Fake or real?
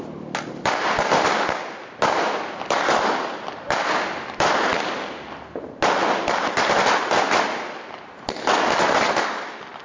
real